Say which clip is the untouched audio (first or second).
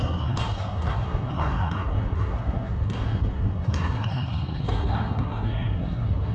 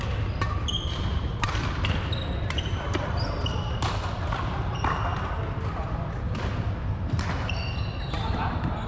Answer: second